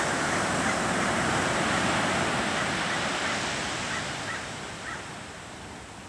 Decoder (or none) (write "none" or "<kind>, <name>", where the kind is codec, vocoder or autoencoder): none